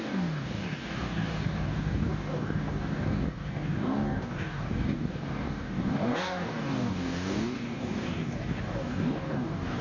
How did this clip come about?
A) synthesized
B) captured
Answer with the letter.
A